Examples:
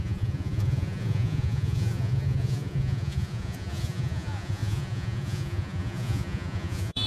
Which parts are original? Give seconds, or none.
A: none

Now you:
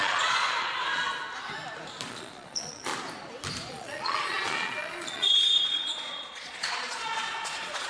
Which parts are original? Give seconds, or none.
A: 1.1-2.1; 2.9-3.7

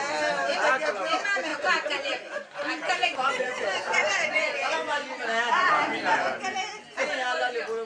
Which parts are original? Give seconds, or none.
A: 0.0-1.5; 5.7-7.9